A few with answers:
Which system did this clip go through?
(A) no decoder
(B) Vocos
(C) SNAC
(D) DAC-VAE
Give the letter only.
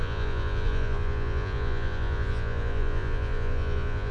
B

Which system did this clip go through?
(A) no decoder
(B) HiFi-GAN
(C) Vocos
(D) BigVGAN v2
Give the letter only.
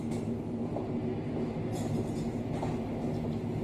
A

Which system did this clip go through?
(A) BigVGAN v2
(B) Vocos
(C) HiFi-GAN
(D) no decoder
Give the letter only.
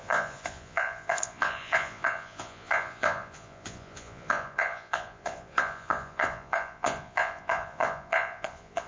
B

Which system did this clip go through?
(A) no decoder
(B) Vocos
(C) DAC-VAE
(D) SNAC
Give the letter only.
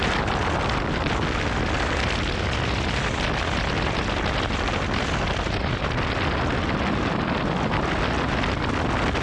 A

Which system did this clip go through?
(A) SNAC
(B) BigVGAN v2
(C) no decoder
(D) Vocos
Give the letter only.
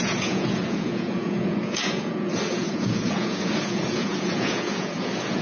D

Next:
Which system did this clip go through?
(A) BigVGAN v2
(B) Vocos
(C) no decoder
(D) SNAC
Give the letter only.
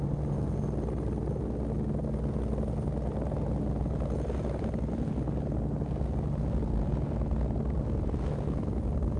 C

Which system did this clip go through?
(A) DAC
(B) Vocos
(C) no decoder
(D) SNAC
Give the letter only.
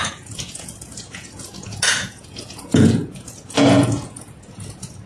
B